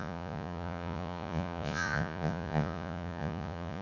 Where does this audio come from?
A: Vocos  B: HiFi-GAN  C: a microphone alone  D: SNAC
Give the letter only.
A